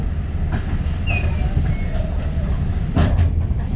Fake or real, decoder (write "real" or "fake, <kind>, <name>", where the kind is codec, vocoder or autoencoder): real